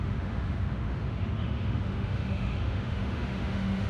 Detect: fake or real fake